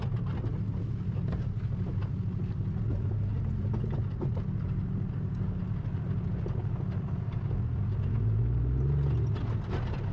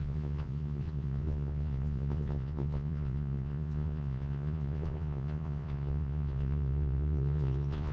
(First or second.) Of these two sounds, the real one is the first